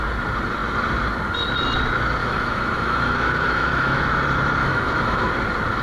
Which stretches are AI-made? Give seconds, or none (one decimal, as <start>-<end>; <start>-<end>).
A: 2.2-4.0; 4.6-5.3